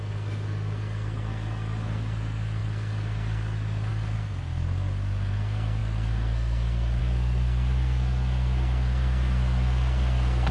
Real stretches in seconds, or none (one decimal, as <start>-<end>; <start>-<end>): none